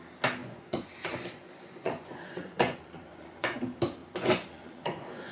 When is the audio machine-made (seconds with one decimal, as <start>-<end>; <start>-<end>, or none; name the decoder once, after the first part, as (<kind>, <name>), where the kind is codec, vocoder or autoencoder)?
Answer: 0.4-3.6 (vocoder, Vocos); 4.0-5.3